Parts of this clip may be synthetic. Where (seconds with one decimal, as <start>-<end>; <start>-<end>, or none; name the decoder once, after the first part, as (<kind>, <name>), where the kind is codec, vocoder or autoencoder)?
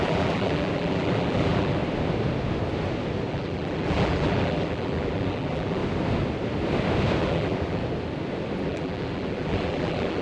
0.0-1.8 (vocoder, BigVGAN v2); 3.3-5.8; 7.2-7.8; 8.6-10.2